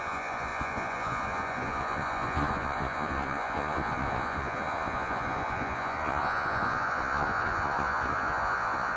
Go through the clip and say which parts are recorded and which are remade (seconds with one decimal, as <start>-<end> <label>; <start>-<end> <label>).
0.0-9.0 remade